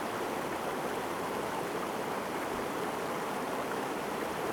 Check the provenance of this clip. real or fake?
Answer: fake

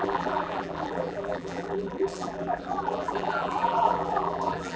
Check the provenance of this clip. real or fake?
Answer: fake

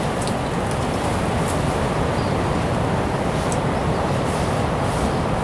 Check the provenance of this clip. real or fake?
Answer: real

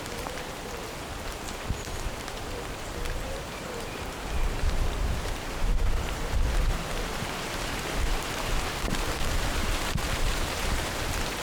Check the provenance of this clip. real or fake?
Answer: fake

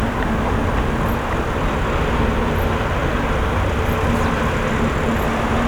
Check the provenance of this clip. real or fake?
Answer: real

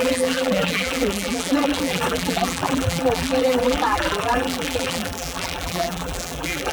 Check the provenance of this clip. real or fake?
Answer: fake